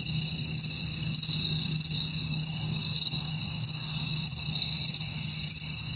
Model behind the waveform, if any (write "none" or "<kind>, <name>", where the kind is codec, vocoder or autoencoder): codec, DAC